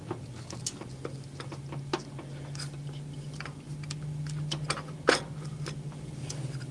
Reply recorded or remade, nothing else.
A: recorded